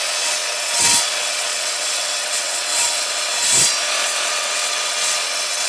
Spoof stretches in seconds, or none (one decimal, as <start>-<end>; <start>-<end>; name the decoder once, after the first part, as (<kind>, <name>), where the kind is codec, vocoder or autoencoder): 0.0-3.3 (vocoder, WaveNeXt); 4.3-5.7